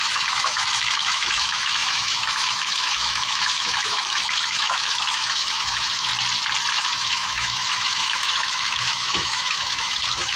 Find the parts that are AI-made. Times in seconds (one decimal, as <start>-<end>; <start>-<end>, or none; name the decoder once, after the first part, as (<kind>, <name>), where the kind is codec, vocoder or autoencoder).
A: 0.0-6.1 (autoencoder, DAC-VAE); 6.7-10.4